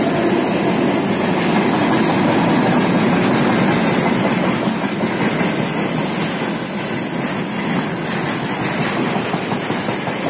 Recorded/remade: recorded